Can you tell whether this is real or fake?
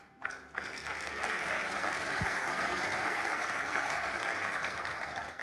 fake